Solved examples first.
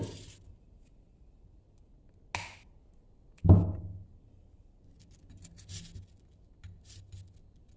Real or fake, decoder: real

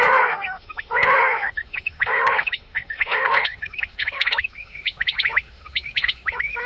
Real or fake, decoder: fake, autoencoder, DAC-VAE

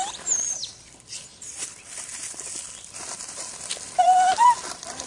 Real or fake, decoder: fake, vocoder, BigVGAN v2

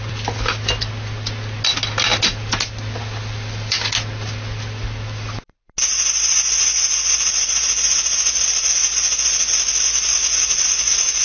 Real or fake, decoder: real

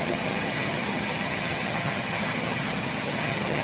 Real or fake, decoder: fake, vocoder, HiFi-GAN